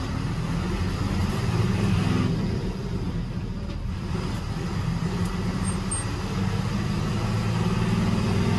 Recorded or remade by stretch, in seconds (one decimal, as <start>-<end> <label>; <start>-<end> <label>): 0.0-1.2 recorded; 1.2-1.9 remade; 1.9-4.7 recorded; 4.7-5.9 remade; 5.9-8.6 recorded